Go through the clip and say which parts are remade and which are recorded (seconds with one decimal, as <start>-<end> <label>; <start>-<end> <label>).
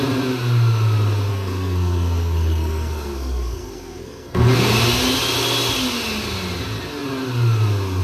0.0-1.3 recorded; 1.3-4.6 remade; 4.6-8.0 recorded